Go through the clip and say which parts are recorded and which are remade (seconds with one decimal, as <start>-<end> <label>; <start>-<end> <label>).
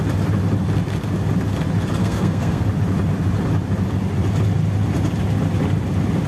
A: 0.0-2.0 recorded; 2.0-2.6 remade; 2.6-6.3 recorded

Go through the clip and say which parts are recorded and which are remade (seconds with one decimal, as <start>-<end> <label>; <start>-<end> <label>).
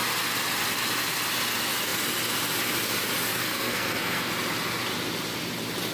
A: 0.0-3.3 recorded; 3.3-4.3 remade; 4.3-5.9 recorded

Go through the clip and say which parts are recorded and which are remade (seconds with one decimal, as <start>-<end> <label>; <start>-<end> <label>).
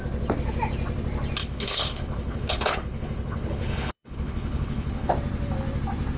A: 0.0-1.4 recorded; 1.4-5.1 remade; 5.1-6.2 recorded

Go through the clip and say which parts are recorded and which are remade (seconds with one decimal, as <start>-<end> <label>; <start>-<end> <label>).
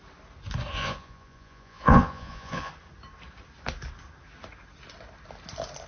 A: 0.0-0.7 recorded; 0.7-2.7 remade; 2.7-5.9 recorded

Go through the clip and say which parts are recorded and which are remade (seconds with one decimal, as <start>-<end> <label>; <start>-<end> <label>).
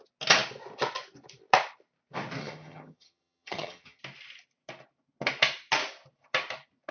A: 0.0-2.4 recorded; 2.4-4.0 remade; 4.0-6.9 recorded